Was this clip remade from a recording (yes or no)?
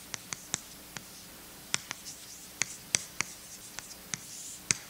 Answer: yes